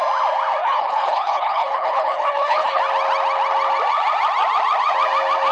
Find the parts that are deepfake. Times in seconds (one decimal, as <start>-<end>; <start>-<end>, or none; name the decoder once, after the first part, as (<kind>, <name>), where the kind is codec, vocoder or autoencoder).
0.6-2.8 (codec, HILCodec)